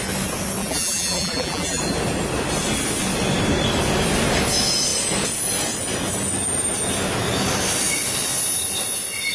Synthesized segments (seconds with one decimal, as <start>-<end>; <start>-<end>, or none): 0.6-1.8